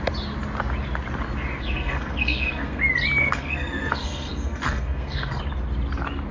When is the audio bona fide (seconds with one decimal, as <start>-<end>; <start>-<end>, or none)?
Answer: 0.0-1.6; 2.8-3.2; 5.4-6.3